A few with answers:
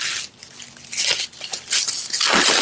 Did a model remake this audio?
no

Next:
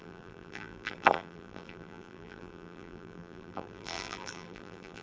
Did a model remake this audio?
yes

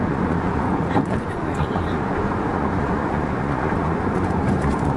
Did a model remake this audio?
yes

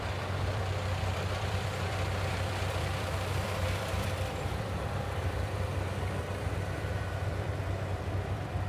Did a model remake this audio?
yes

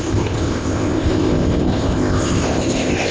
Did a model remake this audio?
yes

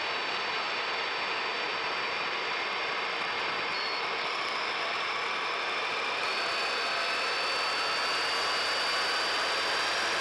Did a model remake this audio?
no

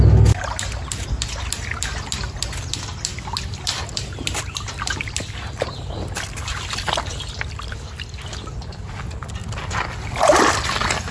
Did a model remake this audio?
no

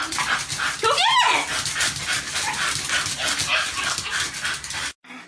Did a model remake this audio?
no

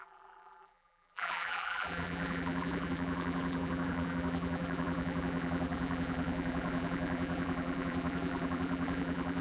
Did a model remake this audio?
yes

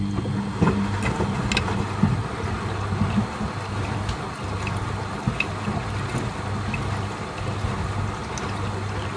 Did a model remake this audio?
no